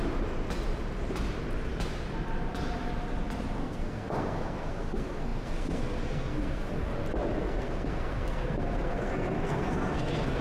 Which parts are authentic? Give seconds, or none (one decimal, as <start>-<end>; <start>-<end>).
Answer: 0.0-3.6; 6.9-7.4